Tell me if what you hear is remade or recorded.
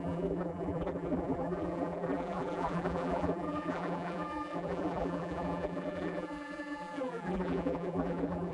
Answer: remade